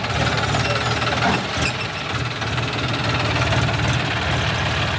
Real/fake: real